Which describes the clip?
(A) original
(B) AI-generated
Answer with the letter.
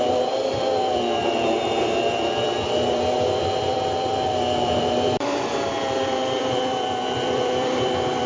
B